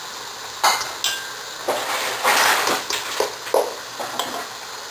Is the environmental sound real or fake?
real